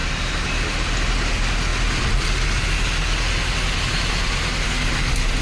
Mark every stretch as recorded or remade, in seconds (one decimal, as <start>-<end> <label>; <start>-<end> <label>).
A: 0.0-5.4 recorded